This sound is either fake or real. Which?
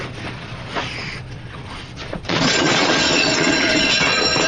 fake